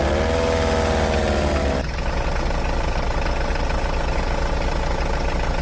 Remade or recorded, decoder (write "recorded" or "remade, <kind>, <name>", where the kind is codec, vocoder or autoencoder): recorded